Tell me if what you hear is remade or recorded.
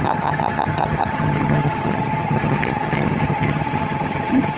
remade